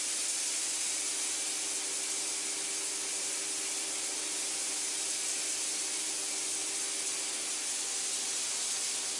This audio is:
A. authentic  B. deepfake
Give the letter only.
A